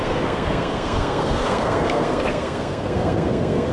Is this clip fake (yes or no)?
yes